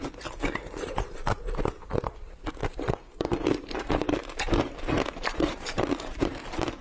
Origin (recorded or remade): remade